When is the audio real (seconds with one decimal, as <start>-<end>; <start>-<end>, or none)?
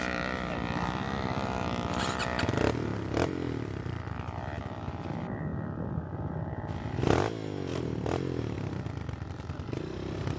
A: 0.0-2.9; 4.6-5.5; 6.9-7.7; 8.4-10.4